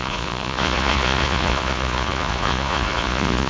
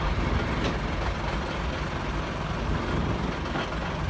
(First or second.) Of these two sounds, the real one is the second